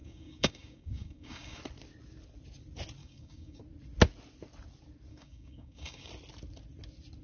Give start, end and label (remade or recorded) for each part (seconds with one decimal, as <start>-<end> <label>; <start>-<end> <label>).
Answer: 0.0-1.6 remade; 1.6-3.0 recorded; 3.0-3.6 remade; 3.6-5.1 recorded; 5.1-6.1 remade; 6.1-7.2 recorded